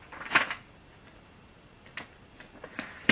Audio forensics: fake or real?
real